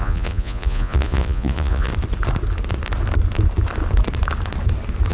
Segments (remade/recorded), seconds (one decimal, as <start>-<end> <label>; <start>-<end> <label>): 0.0-1.9 remade; 1.9-5.1 recorded